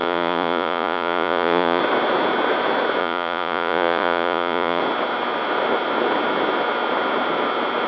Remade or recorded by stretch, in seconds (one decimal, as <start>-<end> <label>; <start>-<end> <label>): 0.0-1.8 remade; 1.8-3.0 recorded; 3.0-4.8 remade; 4.8-7.9 recorded

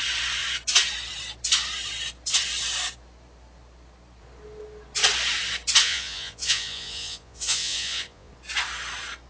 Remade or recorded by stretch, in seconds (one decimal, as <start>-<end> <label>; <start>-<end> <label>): 0.0-5.8 recorded; 5.8-8.3 remade; 8.3-9.3 recorded

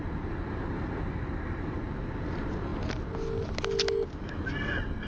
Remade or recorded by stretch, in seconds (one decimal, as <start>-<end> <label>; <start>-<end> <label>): 0.0-5.1 recorded

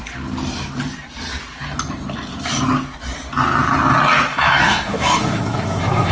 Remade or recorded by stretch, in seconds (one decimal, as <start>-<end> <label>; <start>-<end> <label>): 0.0-4.3 recorded; 4.3-6.1 remade

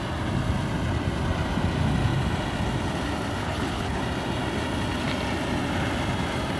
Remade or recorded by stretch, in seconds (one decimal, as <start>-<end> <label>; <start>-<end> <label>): 0.0-3.4 recorded; 3.4-4.0 remade; 4.0-6.6 recorded

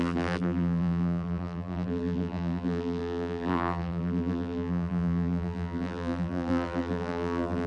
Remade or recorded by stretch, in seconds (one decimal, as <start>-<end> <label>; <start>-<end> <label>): 0.0-7.7 remade

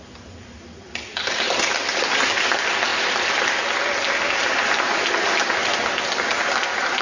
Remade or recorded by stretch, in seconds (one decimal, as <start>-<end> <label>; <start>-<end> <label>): 0.0-2.2 remade; 2.2-7.0 recorded